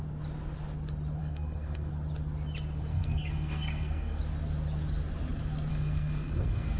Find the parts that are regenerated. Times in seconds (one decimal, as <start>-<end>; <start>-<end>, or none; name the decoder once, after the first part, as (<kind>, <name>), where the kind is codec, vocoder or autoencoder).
1.2-1.9 (codec, SNAC); 2.9-4.2; 5.7-6.8